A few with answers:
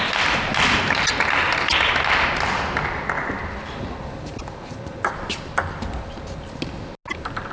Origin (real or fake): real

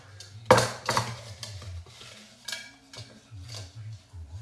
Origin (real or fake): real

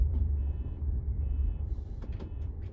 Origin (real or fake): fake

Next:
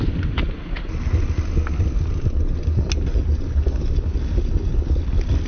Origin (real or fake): real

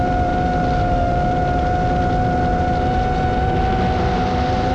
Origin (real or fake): real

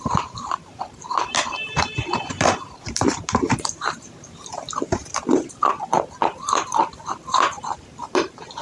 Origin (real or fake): fake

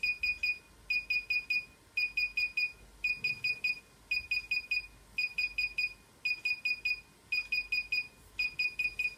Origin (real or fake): real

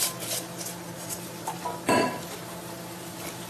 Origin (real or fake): fake